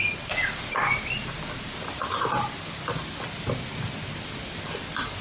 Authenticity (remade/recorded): recorded